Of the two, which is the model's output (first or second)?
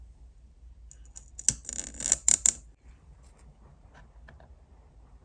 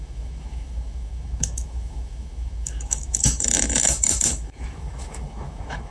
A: second